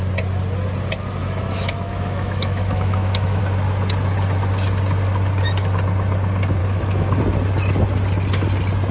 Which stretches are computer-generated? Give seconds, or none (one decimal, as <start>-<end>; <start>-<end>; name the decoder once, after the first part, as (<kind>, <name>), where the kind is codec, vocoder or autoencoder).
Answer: 1.2-3.4 (autoencoder, DAC-VAE); 6.6-7.2

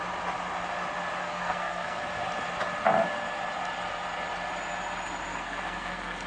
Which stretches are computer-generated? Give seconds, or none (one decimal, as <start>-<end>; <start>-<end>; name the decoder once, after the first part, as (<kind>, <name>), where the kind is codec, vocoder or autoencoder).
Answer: 1.2-2.0 (codec, SNAC); 5.3-6.3

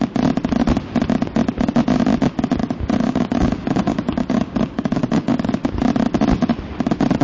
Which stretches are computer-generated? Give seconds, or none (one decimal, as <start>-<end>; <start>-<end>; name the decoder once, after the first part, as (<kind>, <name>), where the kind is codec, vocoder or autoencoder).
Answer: 2.6-5.5 (codec, DAC)

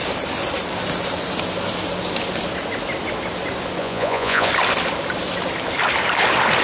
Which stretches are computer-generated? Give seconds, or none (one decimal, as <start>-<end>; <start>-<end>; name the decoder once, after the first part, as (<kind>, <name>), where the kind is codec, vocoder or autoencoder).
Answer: 3.8-4.5 (vocoder, Vocos)

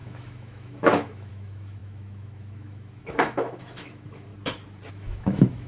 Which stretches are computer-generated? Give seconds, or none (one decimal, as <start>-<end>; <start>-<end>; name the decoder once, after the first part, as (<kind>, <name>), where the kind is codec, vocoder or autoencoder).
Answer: 0.0-4.3 (autoencoder, DAC-VAE); 4.9-5.7

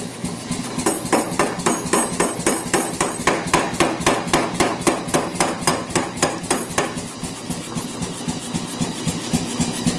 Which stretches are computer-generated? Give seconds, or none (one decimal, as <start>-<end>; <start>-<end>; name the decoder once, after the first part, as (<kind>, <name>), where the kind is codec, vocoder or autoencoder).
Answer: none